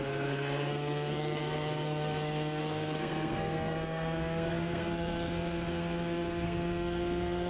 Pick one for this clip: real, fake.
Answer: fake